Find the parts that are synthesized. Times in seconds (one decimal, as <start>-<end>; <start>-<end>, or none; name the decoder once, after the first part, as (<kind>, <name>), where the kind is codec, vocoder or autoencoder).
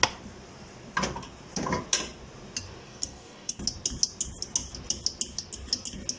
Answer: 2.8-3.6 (codec, DAC)